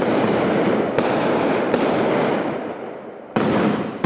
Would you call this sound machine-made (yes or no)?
no